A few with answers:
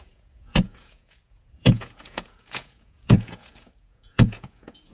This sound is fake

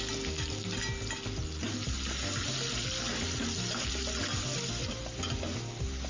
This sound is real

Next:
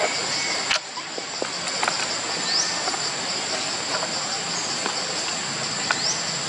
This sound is real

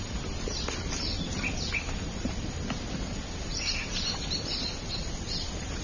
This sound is real